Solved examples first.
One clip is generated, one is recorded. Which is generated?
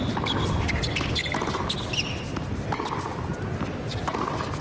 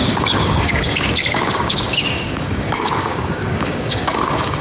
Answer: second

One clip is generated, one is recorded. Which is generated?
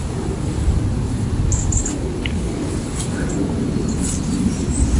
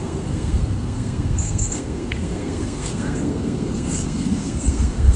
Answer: second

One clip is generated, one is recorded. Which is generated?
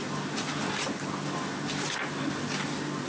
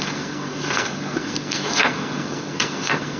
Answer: second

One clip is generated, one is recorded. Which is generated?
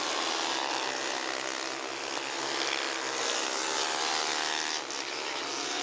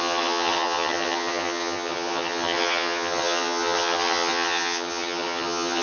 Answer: second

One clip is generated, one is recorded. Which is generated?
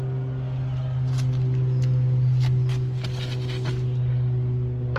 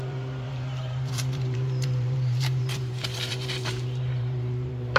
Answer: second